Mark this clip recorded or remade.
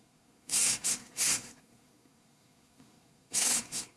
remade